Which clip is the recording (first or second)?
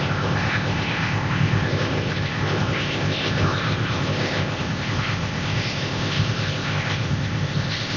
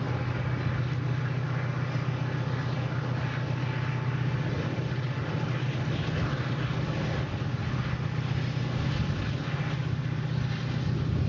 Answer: second